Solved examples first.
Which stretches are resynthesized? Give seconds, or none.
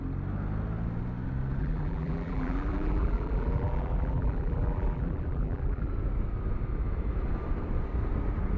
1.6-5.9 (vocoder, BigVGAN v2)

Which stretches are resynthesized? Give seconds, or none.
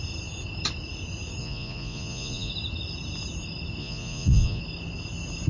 1.4-2.5 (vocoder, Vocos); 3.8-4.6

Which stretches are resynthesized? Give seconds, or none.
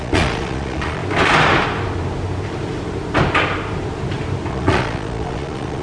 0.0-1.0 (vocoder, Vocos); 4.5-5.8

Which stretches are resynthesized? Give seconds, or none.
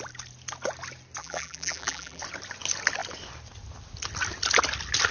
1.2-2.2 (vocoder, BigVGAN v2)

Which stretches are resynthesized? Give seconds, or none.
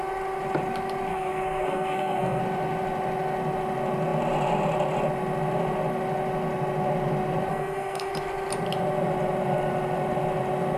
1.1-2.4 (codec, SNAC); 7.5-8.1